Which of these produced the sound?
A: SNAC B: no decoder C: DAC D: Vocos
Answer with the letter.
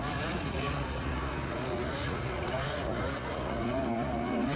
D